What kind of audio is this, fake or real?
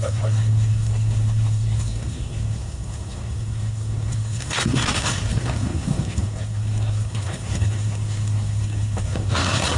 fake